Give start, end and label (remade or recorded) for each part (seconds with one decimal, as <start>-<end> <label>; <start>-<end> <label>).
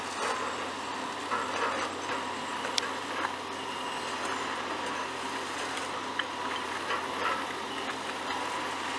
0.0-9.0 recorded